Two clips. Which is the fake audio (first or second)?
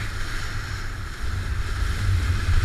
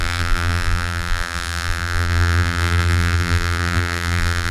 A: second